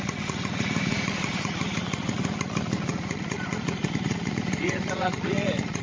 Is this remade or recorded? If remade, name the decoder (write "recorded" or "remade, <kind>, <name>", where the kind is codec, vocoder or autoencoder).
remade, vocoder, Vocos